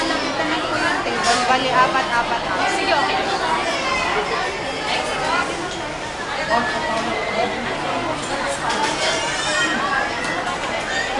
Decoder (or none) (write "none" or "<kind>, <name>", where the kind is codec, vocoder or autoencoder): none